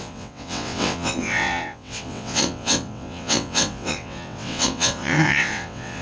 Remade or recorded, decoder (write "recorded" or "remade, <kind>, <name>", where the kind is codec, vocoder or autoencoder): remade, vocoder, WaveNeXt